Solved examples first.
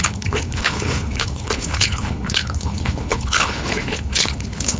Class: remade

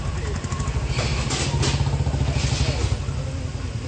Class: recorded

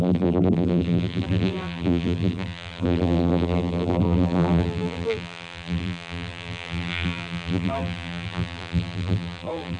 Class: remade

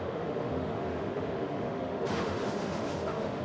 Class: remade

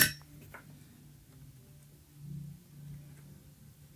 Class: recorded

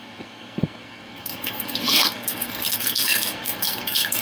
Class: remade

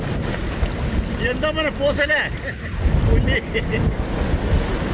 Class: recorded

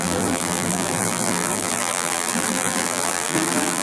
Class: remade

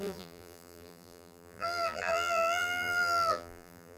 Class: remade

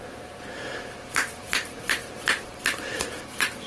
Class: remade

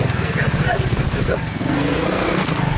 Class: remade